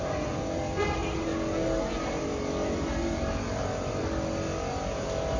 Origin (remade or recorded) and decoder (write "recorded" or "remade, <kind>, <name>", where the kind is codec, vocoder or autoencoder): recorded